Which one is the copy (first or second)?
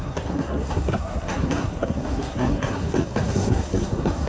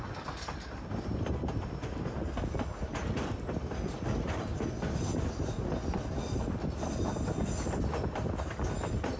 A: first